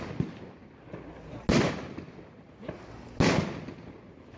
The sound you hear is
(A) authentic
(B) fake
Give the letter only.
A